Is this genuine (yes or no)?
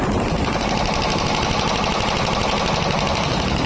yes